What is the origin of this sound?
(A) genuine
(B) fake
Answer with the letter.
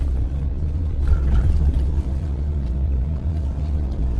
B